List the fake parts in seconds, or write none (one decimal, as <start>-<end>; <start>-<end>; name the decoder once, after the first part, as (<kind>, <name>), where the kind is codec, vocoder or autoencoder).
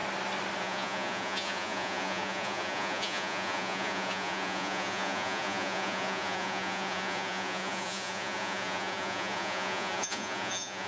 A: 0.6-10.9 (vocoder, Vocos)